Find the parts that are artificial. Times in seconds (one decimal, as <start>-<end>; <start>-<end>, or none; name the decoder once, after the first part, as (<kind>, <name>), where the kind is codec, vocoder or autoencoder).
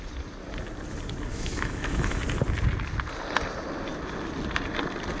1.3-2.2 (autoencoder, DAC-VAE)